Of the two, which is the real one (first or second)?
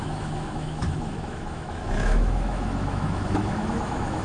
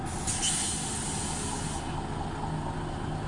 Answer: second